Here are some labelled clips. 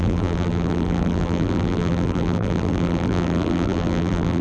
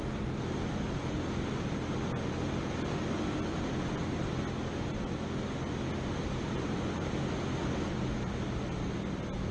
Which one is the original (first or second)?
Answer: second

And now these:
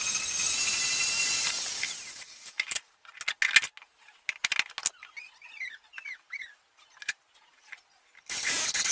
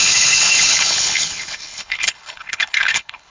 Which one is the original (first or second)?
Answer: first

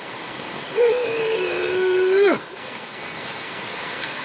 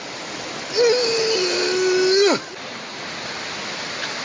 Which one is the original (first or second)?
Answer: second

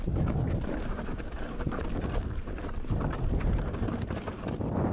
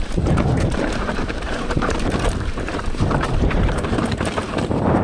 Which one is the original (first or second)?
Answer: first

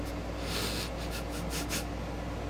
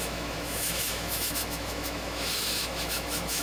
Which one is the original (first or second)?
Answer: first